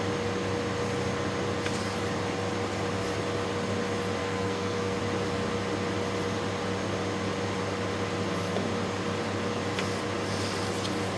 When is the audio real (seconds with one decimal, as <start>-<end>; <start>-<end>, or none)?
0.0-4.2; 5.0-11.2